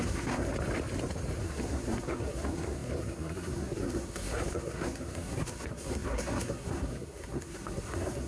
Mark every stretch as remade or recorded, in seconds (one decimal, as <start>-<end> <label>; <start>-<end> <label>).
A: 0.0-0.5 remade; 0.5-1.4 recorded; 1.4-8.3 remade